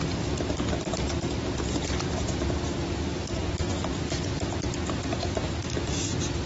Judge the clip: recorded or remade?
recorded